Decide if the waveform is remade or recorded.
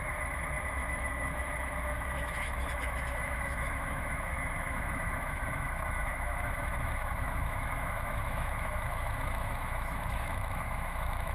remade